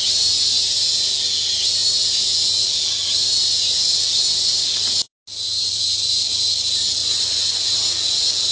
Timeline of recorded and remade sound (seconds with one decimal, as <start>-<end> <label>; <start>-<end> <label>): 0.0-7.0 recorded; 7.0-7.6 remade; 7.6-8.5 recorded